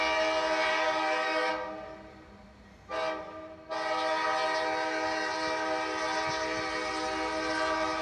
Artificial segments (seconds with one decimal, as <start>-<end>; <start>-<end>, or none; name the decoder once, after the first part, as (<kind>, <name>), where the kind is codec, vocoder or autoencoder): 0.7-1.5 (codec, DAC)